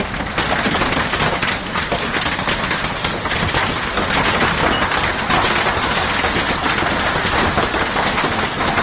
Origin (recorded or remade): recorded